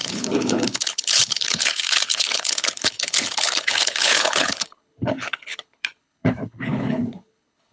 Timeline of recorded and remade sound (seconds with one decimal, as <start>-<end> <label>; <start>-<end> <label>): 0.0-7.7 remade